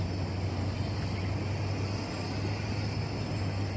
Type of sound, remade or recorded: recorded